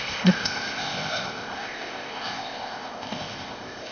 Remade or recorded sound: remade